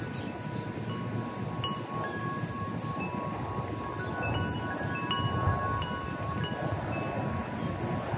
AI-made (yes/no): no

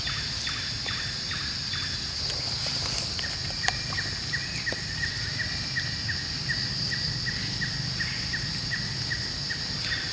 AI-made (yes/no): no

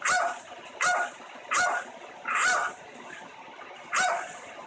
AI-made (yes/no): no